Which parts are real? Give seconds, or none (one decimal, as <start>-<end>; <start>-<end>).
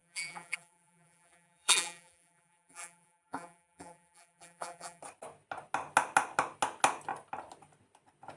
5.0-8.4